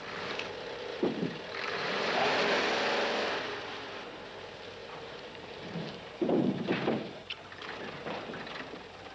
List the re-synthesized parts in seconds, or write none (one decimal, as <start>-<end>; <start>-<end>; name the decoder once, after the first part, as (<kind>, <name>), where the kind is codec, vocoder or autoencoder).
0.9-2.6 (vocoder, BigVGAN v2); 4.8-8.5